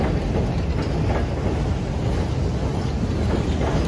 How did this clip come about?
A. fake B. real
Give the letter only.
B